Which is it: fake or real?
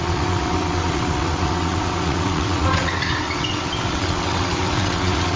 fake